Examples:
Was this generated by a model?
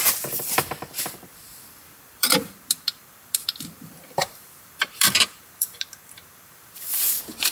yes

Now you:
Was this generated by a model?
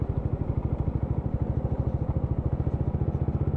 no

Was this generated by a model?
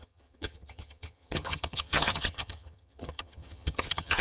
yes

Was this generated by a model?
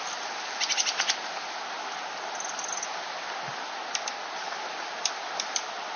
no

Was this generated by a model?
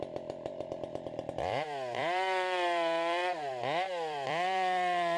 yes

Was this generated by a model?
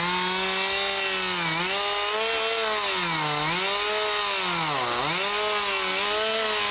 no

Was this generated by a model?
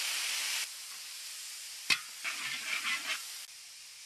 no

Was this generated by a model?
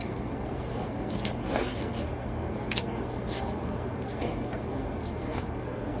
yes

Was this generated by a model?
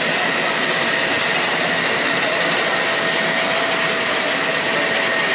no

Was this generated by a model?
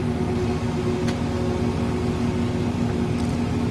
no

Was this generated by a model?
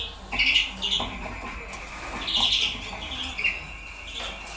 no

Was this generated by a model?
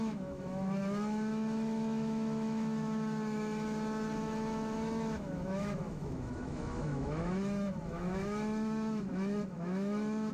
yes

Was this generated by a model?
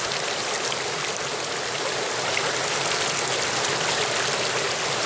no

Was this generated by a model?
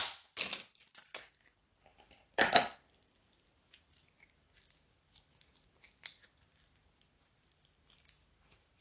no